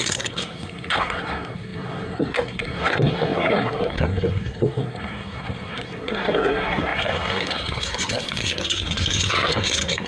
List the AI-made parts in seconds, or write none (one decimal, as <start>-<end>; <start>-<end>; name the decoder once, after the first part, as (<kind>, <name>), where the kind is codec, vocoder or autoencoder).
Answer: 0.0-10.1 (codec, SNAC)